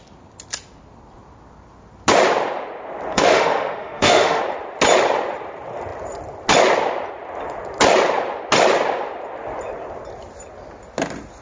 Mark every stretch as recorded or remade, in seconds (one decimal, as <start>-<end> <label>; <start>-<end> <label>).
0.0-3.1 recorded; 3.1-4.4 remade; 4.4-11.4 recorded

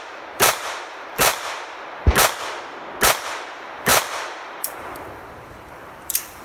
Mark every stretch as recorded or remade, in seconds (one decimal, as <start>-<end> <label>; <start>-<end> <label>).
0.0-1.3 remade; 1.3-3.4 recorded; 3.4-3.9 remade; 3.9-4.6 recorded; 4.6-6.4 remade

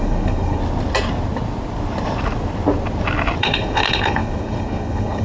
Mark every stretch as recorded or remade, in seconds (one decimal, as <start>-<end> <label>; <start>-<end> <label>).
0.0-0.6 remade; 0.6-3.4 recorded; 3.4-5.2 remade

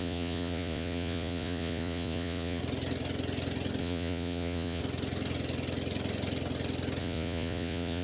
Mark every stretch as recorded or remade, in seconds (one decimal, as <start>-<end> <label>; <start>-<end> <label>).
0.0-2.6 remade; 2.6-3.8 recorded; 3.8-4.8 remade; 4.8-7.0 recorded; 7.0-8.0 remade

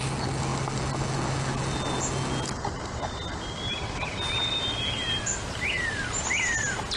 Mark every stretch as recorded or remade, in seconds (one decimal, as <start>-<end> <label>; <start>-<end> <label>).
0.0-7.0 recorded

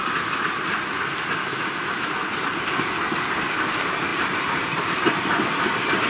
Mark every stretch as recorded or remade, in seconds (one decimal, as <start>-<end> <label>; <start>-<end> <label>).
0.0-1.4 recorded; 1.4-2.1 remade; 2.1-6.1 recorded